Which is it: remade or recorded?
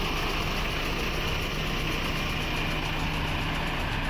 recorded